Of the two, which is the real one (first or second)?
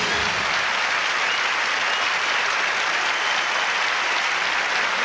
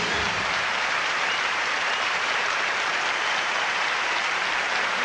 first